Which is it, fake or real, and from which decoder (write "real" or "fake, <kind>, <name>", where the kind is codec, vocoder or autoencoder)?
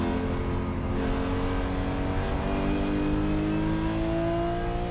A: real